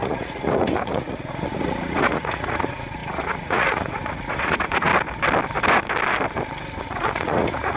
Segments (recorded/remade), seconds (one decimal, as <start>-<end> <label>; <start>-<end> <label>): 0.0-4.9 remade; 4.9-6.8 recorded; 6.8-7.8 remade